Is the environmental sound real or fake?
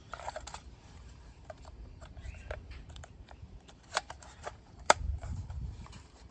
fake